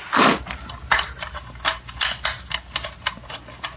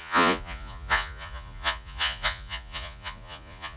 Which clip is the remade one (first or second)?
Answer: second